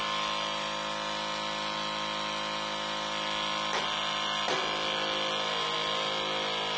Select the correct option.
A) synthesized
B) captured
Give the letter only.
B